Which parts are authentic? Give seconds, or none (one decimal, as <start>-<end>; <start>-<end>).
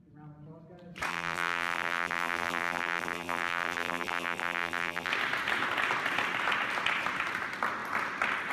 0.0-1.1; 5.1-8.5